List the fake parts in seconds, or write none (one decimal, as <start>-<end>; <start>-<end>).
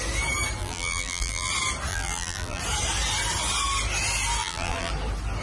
0.6-1.5; 1.9-2.6; 4.4-4.9